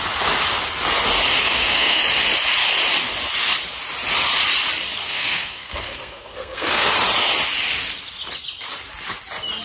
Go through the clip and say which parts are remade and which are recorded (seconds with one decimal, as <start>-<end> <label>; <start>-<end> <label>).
0.0-1.4 recorded; 1.4-2.0 remade; 2.0-5.0 recorded; 5.0-6.9 remade; 6.9-9.6 recorded